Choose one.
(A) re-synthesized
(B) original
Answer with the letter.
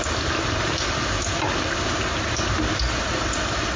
B